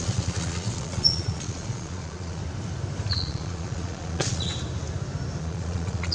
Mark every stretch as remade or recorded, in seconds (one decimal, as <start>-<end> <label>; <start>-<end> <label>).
0.0-2.4 remade; 2.4-3.1 recorded; 3.1-4.5 remade; 4.5-5.4 recorded; 5.4-6.1 remade